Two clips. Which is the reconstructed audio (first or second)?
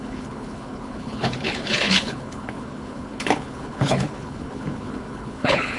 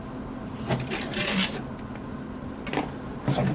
first